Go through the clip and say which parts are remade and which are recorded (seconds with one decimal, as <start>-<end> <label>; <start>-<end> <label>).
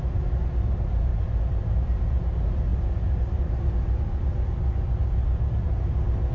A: 0.0-6.3 remade